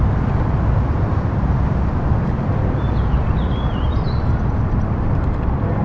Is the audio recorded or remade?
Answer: recorded